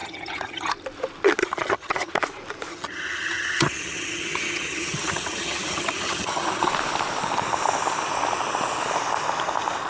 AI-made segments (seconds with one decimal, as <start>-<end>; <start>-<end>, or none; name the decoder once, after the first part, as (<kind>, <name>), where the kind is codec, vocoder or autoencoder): 0.0-0.7 (vocoder, HiFi-GAN); 1.4-2.1; 2.7-6.7